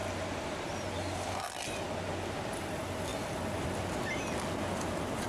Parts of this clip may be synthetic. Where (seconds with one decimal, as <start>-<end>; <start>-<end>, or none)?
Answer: none